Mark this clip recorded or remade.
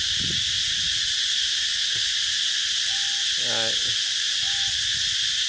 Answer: recorded